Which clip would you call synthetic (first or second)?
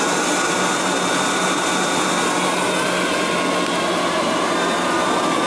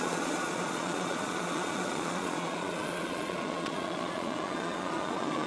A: second